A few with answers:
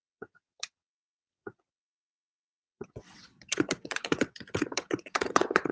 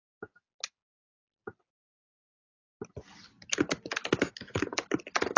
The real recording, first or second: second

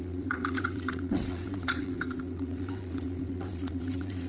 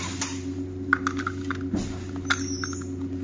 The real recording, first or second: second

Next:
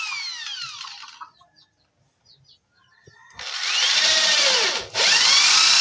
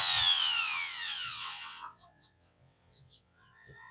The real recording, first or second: first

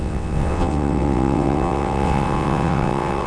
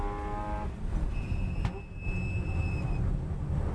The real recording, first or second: second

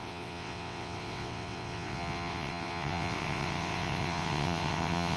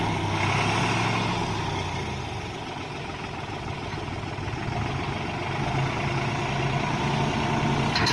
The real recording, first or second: second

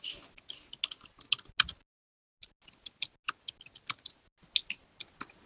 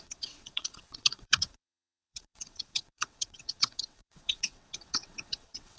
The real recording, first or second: first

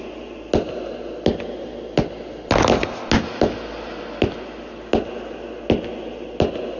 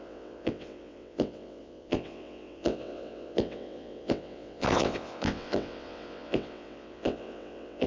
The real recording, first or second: first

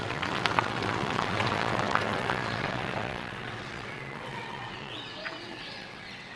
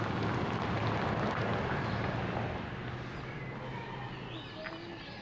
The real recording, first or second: second